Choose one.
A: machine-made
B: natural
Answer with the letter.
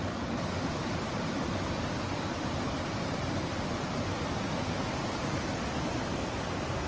B